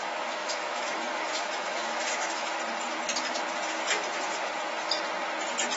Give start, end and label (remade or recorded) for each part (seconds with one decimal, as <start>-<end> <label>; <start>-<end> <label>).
0.0-0.4 recorded; 0.4-2.5 remade; 2.5-5.8 recorded